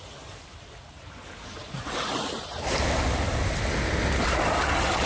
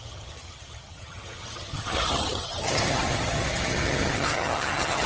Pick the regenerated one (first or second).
second